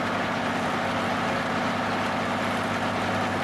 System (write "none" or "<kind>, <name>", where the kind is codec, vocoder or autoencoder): none